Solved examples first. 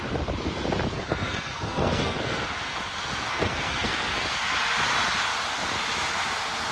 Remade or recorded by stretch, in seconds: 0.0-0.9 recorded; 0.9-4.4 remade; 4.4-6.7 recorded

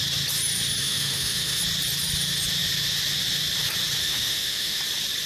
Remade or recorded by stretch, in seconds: 0.0-0.8 recorded; 0.8-1.6 remade; 1.6-4.0 recorded; 4.0-4.8 remade; 4.8-5.3 recorded

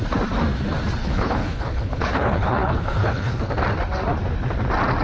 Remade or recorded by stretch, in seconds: 0.0-1.0 recorded; 1.0-3.5 remade; 3.5-5.0 recorded

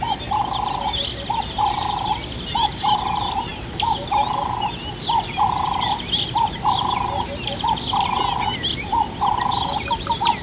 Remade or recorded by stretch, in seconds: 0.0-10.4 recorded